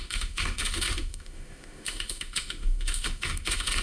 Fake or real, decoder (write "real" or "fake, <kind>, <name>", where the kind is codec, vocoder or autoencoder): fake, autoencoder, DAC-VAE